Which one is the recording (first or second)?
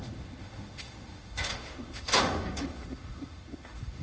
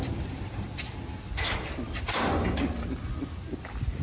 second